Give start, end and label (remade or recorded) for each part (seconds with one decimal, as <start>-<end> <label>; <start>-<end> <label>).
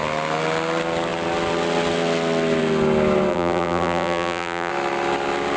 0.0-3.3 recorded; 3.3-4.7 remade; 4.7-5.6 recorded